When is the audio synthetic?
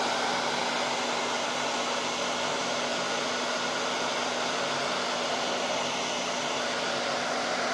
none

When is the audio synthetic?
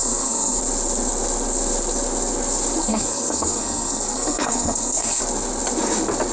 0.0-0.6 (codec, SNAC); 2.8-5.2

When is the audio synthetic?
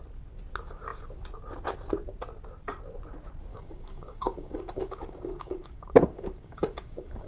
3.5-7.3 (codec, DAC)